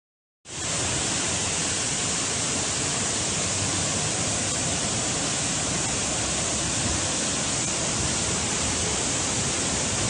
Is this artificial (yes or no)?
no